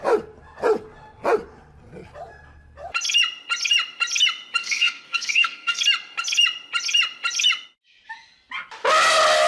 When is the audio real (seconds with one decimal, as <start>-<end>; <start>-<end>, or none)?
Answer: 0.0-4.6; 5.8-9.5